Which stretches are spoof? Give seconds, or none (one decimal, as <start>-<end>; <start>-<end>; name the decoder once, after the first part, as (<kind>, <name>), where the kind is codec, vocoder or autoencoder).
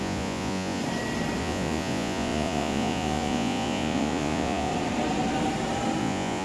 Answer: 0.0-0.8 (vocoder, Vocos); 1.4-4.7; 6.0-6.4